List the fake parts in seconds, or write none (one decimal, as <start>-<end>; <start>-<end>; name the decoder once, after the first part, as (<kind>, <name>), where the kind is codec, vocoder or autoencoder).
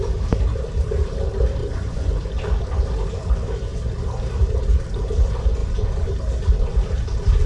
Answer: 1.6-2.2 (vocoder, Vocos)